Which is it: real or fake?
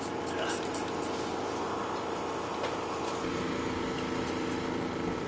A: real